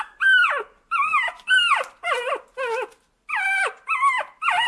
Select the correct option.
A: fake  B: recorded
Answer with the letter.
B